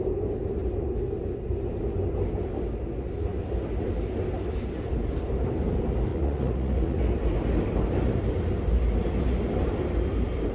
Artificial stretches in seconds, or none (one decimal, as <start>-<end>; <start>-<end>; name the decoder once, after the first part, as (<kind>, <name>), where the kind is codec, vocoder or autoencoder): 6.1-7.0 (vocoder, Vocos)